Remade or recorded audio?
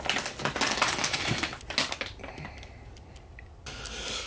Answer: recorded